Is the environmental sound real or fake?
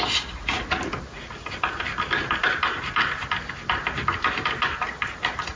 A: real